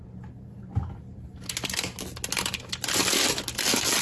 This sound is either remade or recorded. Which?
recorded